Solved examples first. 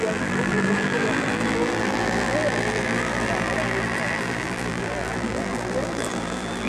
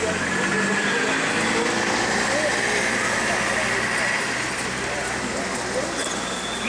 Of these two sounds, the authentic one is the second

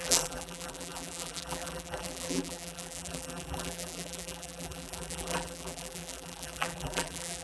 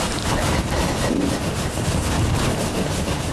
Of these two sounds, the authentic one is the second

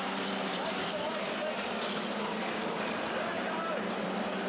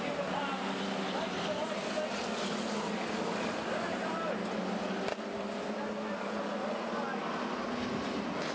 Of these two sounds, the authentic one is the second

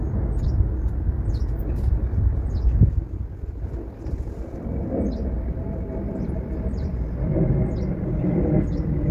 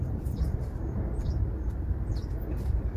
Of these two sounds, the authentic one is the first